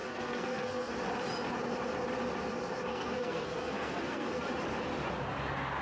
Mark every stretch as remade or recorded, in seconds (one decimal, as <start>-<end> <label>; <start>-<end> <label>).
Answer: 0.0-0.9 remade; 0.9-2.9 recorded; 2.9-4.4 remade; 4.4-5.8 recorded